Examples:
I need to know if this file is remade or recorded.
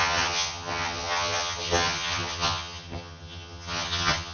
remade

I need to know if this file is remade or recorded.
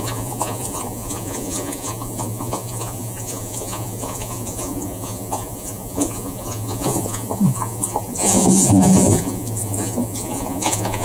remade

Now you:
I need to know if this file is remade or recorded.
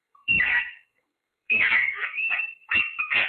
remade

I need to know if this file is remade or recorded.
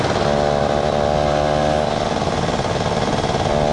recorded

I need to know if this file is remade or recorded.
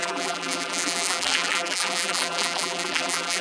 remade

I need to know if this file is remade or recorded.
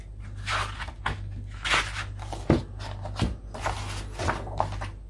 recorded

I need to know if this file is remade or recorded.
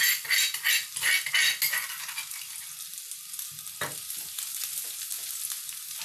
recorded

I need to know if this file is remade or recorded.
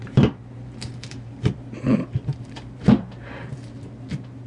remade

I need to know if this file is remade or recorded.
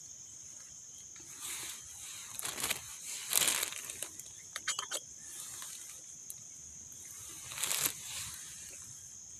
recorded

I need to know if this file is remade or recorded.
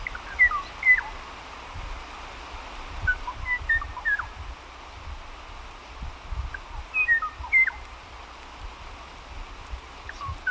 recorded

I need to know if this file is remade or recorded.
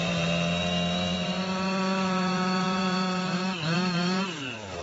remade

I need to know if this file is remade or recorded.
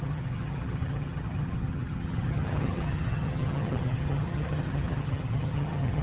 remade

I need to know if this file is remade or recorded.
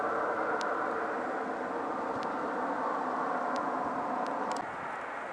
recorded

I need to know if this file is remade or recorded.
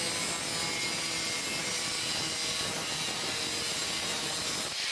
recorded